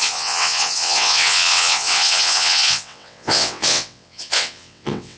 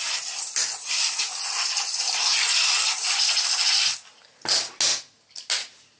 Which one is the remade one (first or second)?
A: first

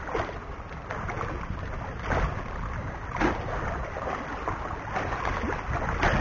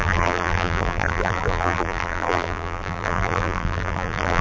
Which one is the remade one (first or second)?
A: second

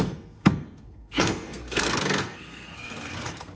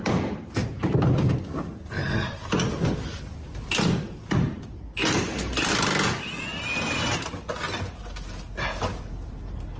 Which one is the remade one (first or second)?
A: first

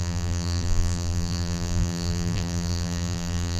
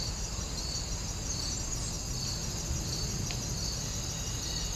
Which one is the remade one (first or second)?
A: first